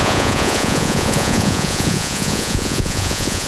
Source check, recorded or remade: remade